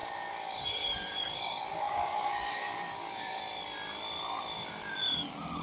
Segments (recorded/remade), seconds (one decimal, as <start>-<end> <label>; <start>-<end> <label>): 0.0-3.4 remade; 3.4-5.6 recorded